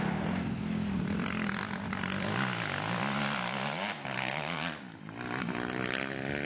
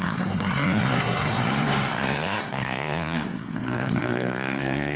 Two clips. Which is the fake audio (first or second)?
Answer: second